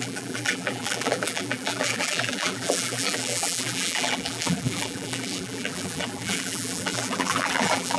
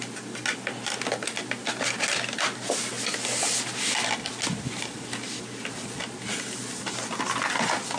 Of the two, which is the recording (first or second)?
second